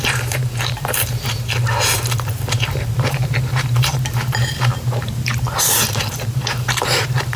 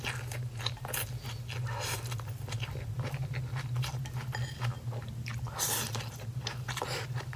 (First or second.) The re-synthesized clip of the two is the first